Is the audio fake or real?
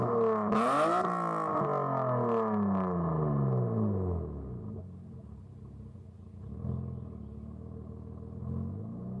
real